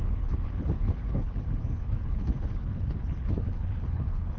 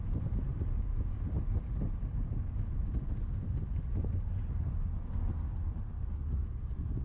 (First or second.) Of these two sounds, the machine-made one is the first